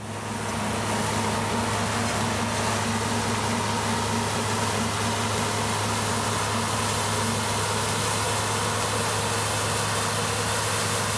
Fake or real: real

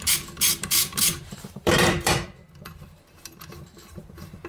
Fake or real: fake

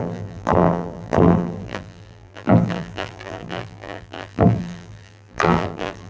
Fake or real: fake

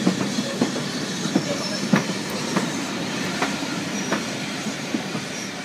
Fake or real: fake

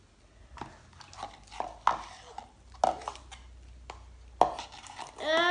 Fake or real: real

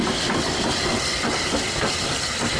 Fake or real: real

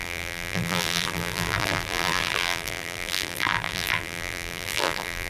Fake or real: fake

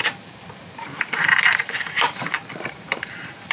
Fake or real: fake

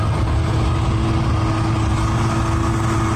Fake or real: real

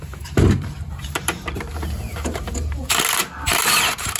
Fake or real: fake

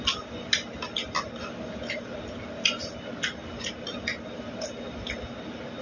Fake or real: real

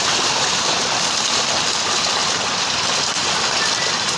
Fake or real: real